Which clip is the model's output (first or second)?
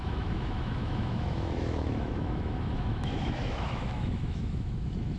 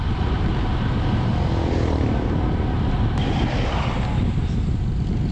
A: first